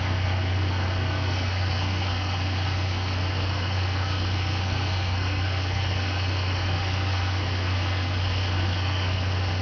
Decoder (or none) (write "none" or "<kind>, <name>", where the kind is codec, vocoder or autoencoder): codec, SNAC